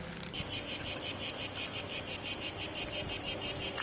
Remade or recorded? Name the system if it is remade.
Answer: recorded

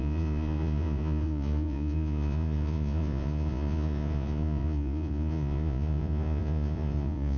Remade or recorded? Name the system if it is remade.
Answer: remade, vocoder, Vocos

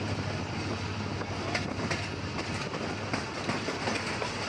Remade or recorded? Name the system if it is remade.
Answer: recorded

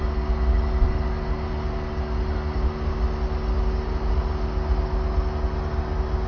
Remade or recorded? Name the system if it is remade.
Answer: recorded